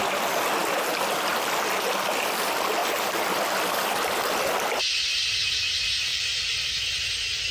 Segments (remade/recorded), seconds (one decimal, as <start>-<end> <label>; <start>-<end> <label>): 0.0-6.1 recorded; 6.1-6.7 remade; 6.7-7.5 recorded